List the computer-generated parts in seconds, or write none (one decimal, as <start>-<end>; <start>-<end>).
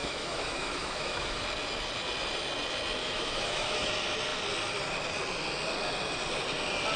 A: 0.0-1.4; 3.0-3.9